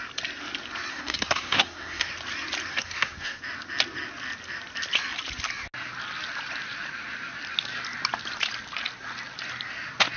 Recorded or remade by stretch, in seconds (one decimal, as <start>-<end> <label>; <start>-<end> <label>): 0.0-0.9 recorded; 0.9-2.1 remade; 2.1-2.7 recorded; 2.7-3.4 remade; 3.4-10.2 recorded